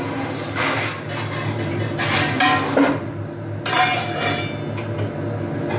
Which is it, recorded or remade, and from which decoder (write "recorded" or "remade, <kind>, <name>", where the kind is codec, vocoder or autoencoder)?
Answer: recorded